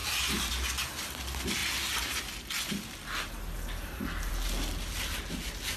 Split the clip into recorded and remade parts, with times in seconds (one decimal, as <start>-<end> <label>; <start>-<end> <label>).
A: 0.0-0.5 remade; 0.5-5.8 recorded